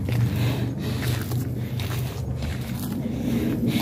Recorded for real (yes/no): yes